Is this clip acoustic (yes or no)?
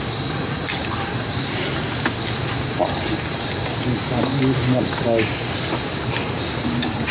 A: yes